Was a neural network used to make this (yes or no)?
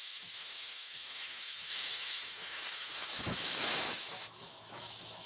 yes